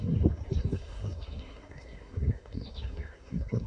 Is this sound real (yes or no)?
no